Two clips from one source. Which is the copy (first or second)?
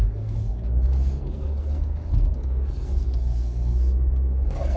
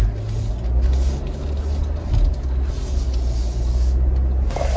first